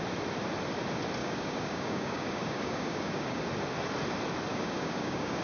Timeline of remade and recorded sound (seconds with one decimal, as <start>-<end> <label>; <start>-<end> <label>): 0.0-1.2 recorded; 1.2-3.4 remade; 3.4-4.5 recorded; 4.5-5.4 remade